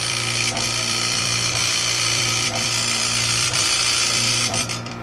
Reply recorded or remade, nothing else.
remade